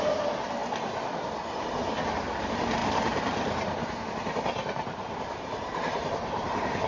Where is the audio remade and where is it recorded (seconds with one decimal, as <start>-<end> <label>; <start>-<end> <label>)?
0.0-2.8 recorded; 2.8-6.9 remade